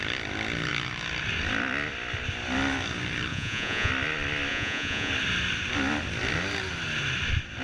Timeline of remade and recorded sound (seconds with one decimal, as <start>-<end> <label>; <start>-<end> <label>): 0.0-3.3 recorded; 3.3-3.9 remade; 3.9-4.5 recorded; 4.5-5.1 remade; 5.1-7.6 recorded